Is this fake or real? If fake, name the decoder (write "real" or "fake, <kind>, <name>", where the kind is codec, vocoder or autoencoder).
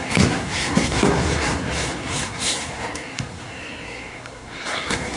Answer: fake, codec, SNAC